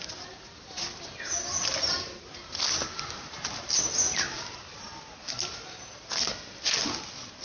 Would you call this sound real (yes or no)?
yes